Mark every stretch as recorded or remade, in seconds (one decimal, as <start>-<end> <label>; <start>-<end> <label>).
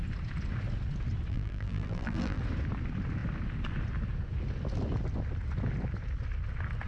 0.0-1.3 recorded; 1.3-2.4 remade; 2.4-6.9 recorded